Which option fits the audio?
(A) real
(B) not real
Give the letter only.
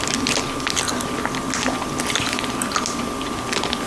A